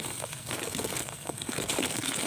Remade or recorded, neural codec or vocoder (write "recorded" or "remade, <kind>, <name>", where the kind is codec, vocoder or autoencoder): remade, codec, SNAC